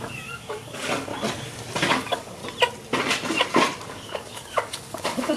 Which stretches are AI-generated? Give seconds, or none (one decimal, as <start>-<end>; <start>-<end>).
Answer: 0.0-1.1; 1.9-2.4; 3.9-5.4